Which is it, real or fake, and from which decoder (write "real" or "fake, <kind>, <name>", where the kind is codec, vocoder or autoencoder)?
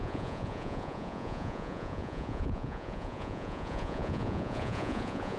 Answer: fake, vocoder, Vocos